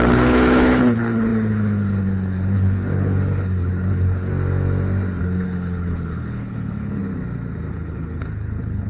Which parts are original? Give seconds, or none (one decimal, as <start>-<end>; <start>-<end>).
4.3-5.2; 7.0-7.7